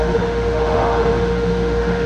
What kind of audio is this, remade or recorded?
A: remade